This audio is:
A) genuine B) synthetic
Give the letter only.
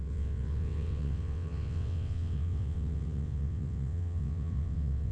B